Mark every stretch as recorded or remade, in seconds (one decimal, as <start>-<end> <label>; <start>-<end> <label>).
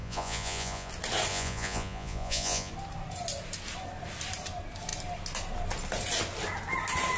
0.0-0.9 remade; 0.9-1.3 recorded; 1.3-2.7 remade; 2.7-7.2 recorded